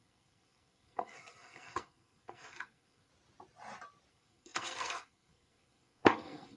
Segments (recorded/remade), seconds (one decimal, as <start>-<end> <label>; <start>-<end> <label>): 0.0-3.1 remade; 3.1-4.1 recorded; 4.1-6.6 remade